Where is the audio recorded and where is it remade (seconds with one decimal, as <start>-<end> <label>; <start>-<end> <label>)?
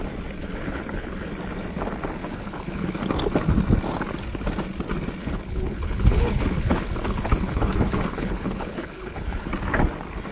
0.0-0.4 recorded; 0.4-1.3 remade; 1.3-2.2 recorded; 2.2-3.0 remade; 3.0-5.2 recorded; 5.2-9.5 remade; 9.5-10.3 recorded